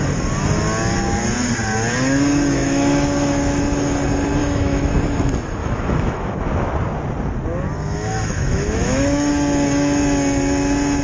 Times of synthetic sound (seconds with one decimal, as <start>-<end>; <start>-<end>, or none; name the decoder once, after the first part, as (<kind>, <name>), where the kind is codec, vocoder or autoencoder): 2.6-3.6 (autoencoder, DAC-VAE); 4.4-4.9; 5.6-6.7; 8.1-9.3